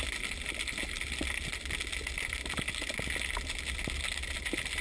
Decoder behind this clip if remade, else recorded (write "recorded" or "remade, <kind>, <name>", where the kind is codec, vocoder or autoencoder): recorded